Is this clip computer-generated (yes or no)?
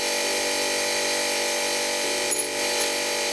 no